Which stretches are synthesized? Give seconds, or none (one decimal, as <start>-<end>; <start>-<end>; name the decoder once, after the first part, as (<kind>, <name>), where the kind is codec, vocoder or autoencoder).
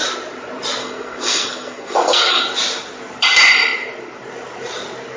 0.8-2.4 (codec, SNAC)